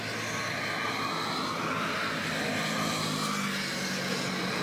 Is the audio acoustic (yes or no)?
yes